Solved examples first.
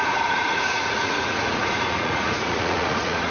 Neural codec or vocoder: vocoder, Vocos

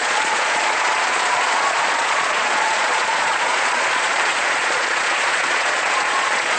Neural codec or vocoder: vocoder, Vocos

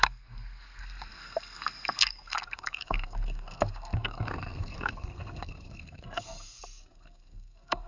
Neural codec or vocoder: codec, SNAC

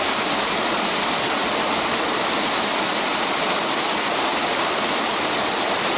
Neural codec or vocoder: none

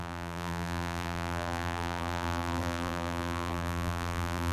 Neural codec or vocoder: vocoder, BigVGAN v2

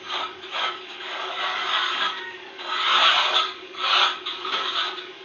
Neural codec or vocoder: codec, DAC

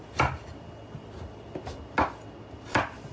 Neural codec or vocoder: none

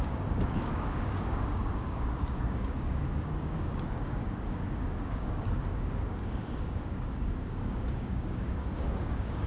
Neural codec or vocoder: codec, DAC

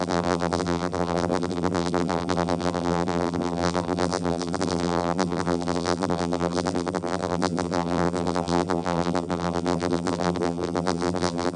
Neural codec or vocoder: vocoder, BigVGAN v2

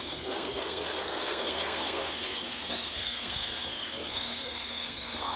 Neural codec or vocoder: codec, SNAC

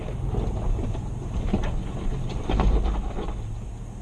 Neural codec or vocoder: none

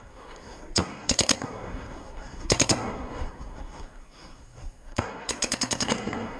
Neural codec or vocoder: codec, SNAC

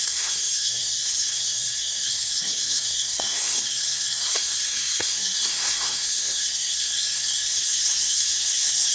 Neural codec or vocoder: codec, SNAC